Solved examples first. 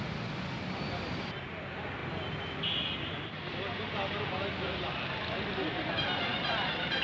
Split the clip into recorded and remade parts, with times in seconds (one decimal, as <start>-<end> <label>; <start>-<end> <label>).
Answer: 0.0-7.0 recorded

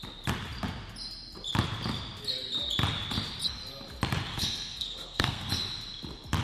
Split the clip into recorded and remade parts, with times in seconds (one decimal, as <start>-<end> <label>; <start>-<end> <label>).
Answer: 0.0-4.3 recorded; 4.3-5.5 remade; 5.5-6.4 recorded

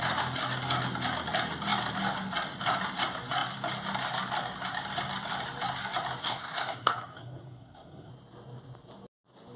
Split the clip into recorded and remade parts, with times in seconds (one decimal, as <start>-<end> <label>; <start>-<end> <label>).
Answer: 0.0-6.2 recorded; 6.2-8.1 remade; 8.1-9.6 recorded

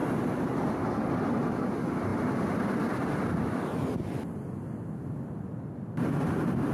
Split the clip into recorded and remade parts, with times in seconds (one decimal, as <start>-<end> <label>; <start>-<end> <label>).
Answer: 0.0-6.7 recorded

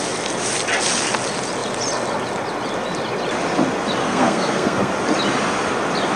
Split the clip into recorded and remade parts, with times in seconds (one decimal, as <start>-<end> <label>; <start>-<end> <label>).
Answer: 0.0-4.0 recorded; 4.0-4.9 remade; 4.9-6.2 recorded

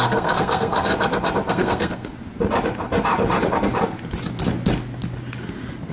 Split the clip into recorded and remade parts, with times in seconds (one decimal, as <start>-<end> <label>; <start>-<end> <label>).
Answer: 0.0-0.9 remade; 0.9-1.5 recorded; 1.5-2.1 remade; 2.1-5.9 recorded